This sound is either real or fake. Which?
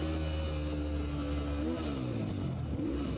real